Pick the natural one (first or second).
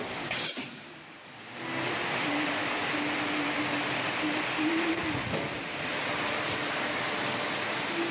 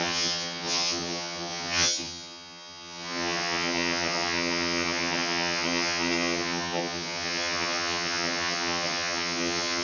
first